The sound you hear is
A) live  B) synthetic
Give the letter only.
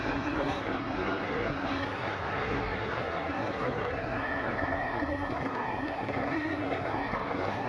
B